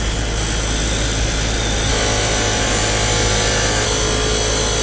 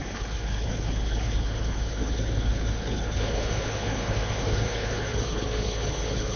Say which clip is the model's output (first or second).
second